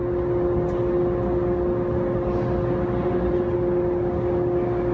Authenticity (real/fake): real